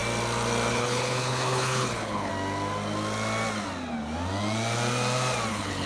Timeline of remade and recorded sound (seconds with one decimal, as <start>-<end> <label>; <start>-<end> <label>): 0.0-0.7 recorded; 0.7-2.3 remade; 2.3-5.5 recorded; 5.5-5.9 remade